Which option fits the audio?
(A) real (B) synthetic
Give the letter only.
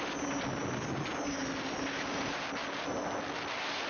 A